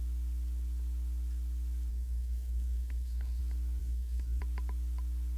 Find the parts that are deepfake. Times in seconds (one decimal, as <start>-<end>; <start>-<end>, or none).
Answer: 1.9-3.4; 3.8-4.4